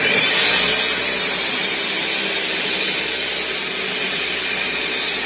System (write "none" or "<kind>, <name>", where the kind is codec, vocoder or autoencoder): none